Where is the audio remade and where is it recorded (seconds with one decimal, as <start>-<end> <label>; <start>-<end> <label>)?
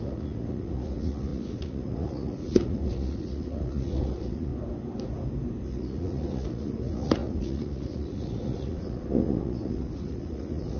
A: 0.0-4.5 remade; 4.5-5.6 recorded; 5.6-10.8 remade